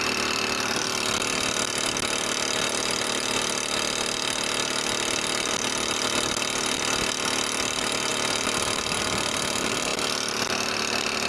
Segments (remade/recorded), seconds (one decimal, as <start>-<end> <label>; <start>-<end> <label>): 0.0-11.3 recorded